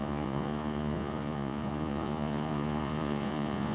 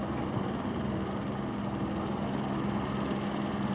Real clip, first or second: second